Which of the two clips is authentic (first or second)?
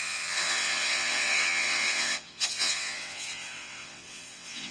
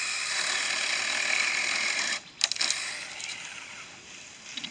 second